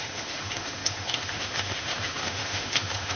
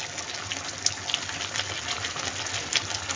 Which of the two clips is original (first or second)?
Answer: second